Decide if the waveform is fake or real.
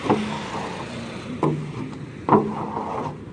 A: real